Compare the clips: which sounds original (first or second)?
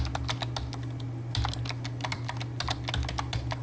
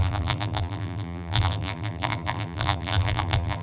first